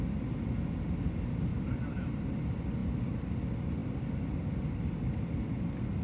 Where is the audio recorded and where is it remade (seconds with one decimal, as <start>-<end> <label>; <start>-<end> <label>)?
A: 0.0-1.5 recorded; 1.5-2.3 remade; 2.3-2.8 recorded; 2.8-3.4 remade; 3.4-3.8 recorded; 3.8-4.9 remade; 4.9-6.0 recorded